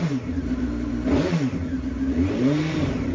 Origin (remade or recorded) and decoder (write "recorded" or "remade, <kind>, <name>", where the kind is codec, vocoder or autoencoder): remade, vocoder, BigVGAN v2